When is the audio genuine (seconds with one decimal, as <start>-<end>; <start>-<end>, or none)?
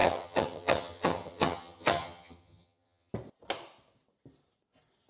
3.1-5.1